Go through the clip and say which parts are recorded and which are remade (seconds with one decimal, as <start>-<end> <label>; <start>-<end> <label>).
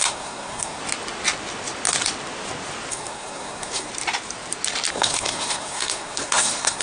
0.0-0.8 remade; 0.8-2.9 recorded; 2.9-3.9 remade; 3.9-4.9 recorded; 4.9-6.8 remade